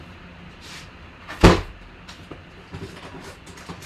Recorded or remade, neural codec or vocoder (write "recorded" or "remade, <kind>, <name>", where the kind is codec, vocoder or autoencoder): recorded